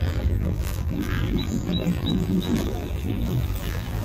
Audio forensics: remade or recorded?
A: remade